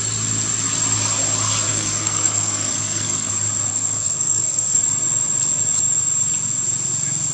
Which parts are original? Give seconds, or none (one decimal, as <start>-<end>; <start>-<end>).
0.0-1.7; 3.3-3.7; 4.8-7.3